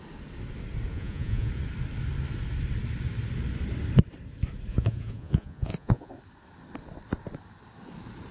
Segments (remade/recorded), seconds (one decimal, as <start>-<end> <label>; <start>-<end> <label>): 0.0-0.9 recorded; 0.9-1.5 remade; 1.5-4.7 recorded; 4.7-6.1 remade; 6.1-8.3 recorded